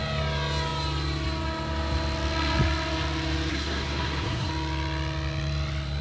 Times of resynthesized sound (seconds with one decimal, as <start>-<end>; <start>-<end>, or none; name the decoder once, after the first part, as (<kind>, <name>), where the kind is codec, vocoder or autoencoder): 3.5-4.5 (codec, SNAC)